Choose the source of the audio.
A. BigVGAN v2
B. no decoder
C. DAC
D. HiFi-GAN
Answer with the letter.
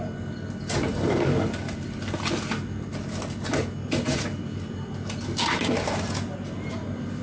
B